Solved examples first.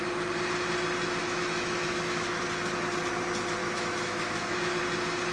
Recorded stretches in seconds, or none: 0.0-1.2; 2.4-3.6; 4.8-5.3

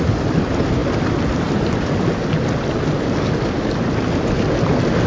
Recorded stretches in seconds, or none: 0.0-5.1

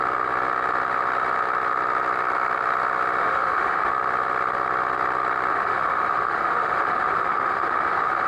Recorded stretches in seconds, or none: 0.0-3.2; 3.9-5.5

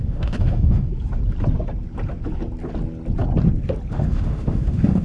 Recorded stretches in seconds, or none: 0.9-3.9

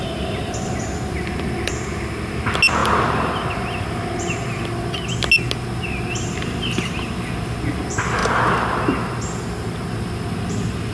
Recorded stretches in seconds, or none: 0.0-10.9

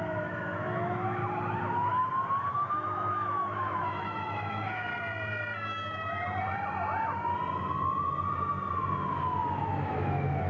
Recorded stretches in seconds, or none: 1.2-2.5; 4.9-9.6

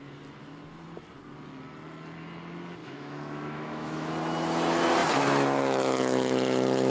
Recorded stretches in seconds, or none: 0.0-2.8; 4.1-6.9